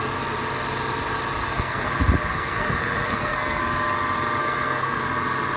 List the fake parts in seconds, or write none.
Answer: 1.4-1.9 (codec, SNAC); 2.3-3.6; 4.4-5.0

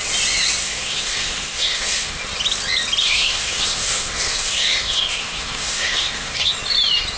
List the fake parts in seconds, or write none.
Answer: 0.6-2.2 (codec, SNAC); 3.0-6.5

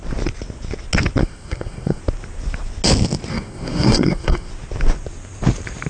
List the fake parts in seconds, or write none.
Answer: 1.2-2.0 (codec, SNAC); 3.3-4.5

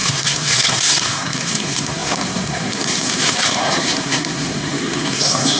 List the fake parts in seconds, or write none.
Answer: 0.0-5.6 (codec, SNAC)